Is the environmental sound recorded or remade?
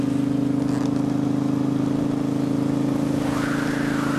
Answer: recorded